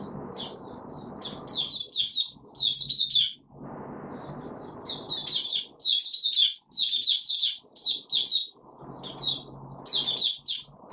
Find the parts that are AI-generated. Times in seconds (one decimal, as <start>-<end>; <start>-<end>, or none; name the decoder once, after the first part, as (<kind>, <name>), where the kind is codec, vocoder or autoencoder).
none

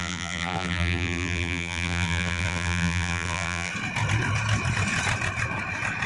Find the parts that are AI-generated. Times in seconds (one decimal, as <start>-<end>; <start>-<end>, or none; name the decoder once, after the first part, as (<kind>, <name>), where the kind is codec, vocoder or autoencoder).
0.0-3.7 (vocoder, BigVGAN v2)